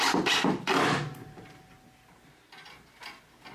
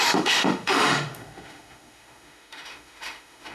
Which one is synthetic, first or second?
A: second